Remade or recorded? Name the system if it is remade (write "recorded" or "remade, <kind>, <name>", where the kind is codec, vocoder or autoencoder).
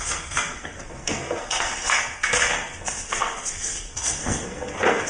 remade, codec, SNAC